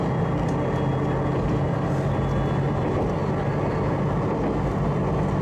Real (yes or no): yes